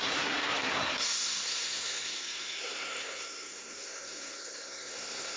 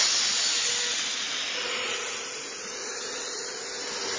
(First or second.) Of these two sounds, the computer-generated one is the first